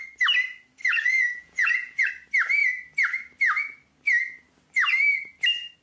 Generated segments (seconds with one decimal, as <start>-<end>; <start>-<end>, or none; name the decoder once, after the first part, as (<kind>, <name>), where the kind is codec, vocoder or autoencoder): 0.8-2.1 (vocoder, Vocos)